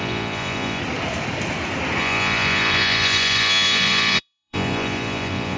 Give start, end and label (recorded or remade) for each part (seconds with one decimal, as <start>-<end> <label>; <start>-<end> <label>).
0.0-0.8 remade; 0.8-2.0 recorded; 2.0-5.6 remade